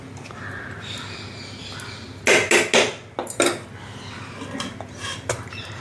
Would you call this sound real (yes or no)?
yes